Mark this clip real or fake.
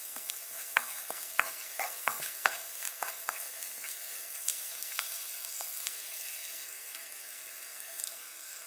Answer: fake